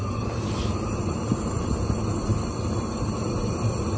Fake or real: fake